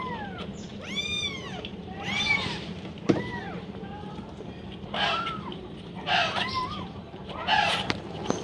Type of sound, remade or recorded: remade